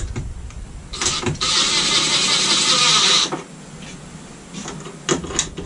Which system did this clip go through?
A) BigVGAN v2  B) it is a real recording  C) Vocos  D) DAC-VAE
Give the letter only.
B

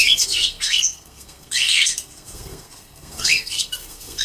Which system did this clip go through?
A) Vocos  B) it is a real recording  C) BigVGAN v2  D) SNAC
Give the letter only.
D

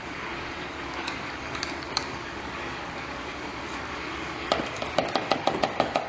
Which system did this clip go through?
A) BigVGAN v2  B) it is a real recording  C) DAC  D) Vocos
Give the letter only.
C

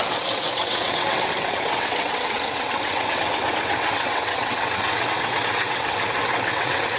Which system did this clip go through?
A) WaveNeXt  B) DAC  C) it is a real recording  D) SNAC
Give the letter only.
A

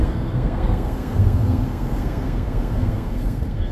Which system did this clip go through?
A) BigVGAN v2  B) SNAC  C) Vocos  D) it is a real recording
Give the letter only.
B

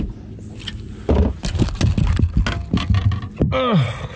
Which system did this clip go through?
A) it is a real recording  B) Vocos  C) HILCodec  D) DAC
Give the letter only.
A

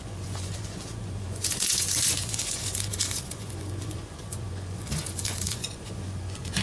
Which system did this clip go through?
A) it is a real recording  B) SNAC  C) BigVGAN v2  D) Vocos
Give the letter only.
D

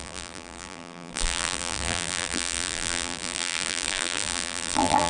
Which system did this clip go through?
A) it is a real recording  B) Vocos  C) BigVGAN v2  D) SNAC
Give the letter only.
C